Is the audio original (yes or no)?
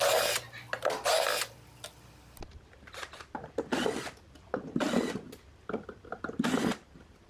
yes